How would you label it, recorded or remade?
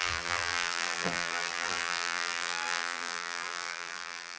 remade